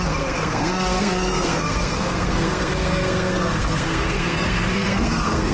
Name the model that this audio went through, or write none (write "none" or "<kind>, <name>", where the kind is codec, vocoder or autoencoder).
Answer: codec, SNAC